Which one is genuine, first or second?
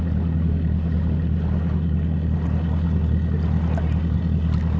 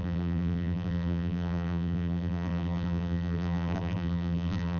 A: first